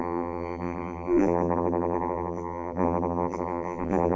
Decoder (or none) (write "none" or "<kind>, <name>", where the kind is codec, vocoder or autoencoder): vocoder, BigVGAN v2